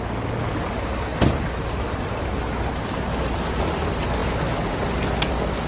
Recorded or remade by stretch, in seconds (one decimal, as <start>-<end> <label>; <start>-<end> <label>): 0.0-5.7 recorded

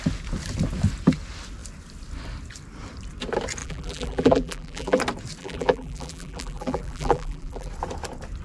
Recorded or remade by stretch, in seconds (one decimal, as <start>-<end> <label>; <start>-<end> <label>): 0.0-3.6 recorded; 3.6-5.0 remade; 5.0-5.4 recorded; 5.4-7.7 remade; 7.7-8.4 recorded